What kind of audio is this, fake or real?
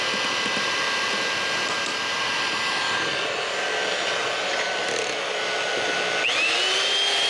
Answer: real